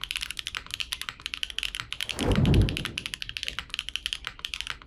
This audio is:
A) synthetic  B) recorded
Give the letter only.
B